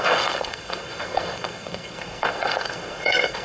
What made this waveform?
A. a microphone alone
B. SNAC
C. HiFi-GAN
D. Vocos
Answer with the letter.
B